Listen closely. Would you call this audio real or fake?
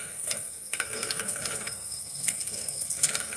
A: fake